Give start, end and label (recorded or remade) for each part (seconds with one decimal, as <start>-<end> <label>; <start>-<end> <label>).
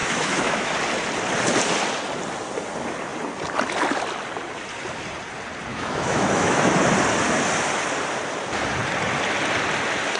0.0-0.7 remade; 0.7-5.7 recorded; 5.7-6.8 remade; 6.8-10.2 recorded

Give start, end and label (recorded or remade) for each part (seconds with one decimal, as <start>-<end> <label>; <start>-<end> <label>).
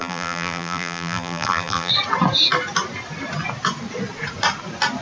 0.0-1.9 remade; 1.9-5.0 recorded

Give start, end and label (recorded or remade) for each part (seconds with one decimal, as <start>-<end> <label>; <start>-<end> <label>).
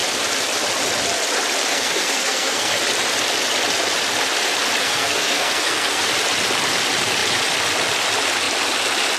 0.0-1.7 recorded; 1.7-2.8 remade; 2.8-4.8 recorded; 4.8-6.1 remade; 6.1-9.2 recorded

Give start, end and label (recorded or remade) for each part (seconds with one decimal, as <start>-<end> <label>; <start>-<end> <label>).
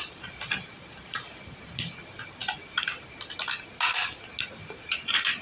0.0-5.4 recorded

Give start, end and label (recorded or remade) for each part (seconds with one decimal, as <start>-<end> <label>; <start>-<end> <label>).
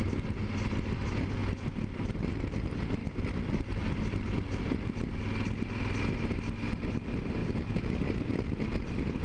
0.0-1.4 recorded; 1.4-2.4 remade; 2.4-3.0 recorded; 3.0-4.6 remade; 4.6-9.2 recorded